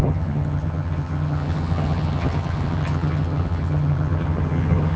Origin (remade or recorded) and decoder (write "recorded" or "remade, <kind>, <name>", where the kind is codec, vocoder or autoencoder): remade, vocoder, HiFi-GAN